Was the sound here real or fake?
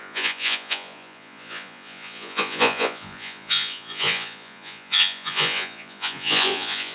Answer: fake